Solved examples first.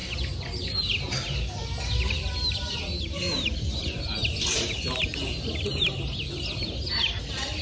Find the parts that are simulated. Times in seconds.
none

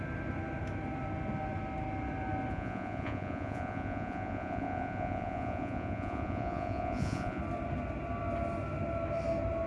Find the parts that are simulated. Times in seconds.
2.5-7.4 (vocoder, Vocos)

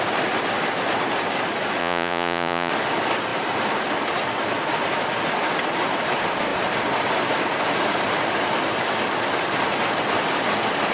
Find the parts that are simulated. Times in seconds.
1.8-2.7 (vocoder, Vocos)

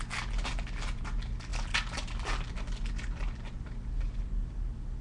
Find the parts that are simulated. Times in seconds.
none

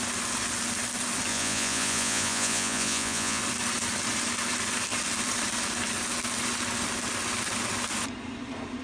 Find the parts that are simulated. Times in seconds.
1.3-3.4 (vocoder, Vocos)